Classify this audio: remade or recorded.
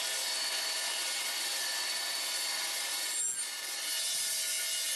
recorded